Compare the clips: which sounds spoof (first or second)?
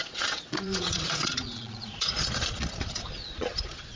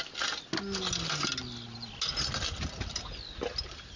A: first